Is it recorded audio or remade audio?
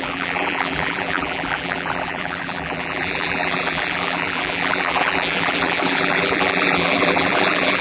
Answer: remade